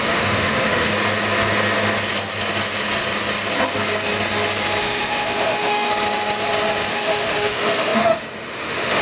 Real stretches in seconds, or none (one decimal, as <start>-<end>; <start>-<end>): 0.9-4.8; 5.9-6.9